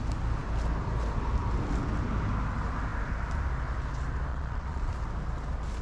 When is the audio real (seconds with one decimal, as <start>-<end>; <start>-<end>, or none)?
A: 0.0-4.3; 4.9-5.8